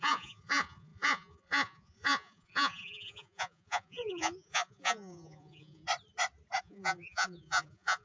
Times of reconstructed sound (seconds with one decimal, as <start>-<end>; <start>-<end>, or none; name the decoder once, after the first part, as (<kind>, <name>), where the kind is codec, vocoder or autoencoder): 0.0-5.8 (vocoder, Vocos); 6.6-8.0